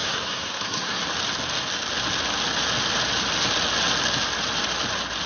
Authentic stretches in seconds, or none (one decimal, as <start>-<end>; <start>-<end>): 1.0-5.3